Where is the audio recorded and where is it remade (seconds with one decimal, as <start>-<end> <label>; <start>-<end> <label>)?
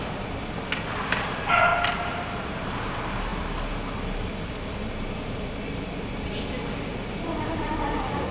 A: 0.0-8.3 recorded